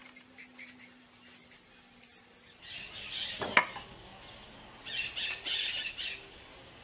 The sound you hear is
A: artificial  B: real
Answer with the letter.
B